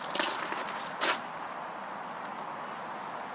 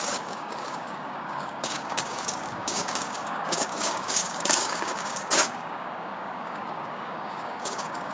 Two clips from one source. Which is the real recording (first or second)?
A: first